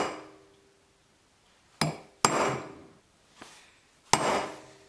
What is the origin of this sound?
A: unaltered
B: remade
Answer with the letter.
A